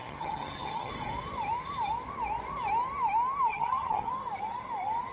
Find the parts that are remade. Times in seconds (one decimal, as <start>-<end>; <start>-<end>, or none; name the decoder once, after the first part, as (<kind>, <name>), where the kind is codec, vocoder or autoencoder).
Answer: 0.0-0.9 (vocoder, HiFi-GAN); 3.5-4.1